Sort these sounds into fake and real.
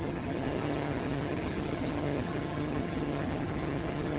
fake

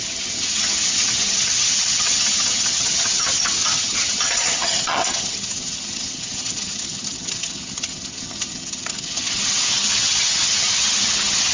fake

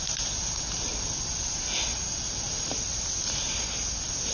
real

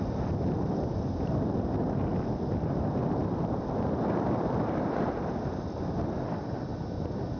real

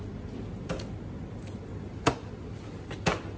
real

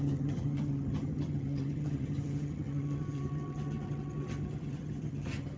fake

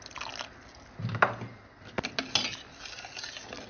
real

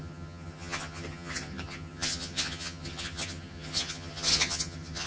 fake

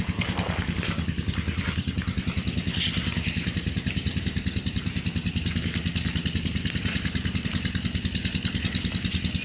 real